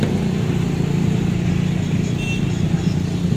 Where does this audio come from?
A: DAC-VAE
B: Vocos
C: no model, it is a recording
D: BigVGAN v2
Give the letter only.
C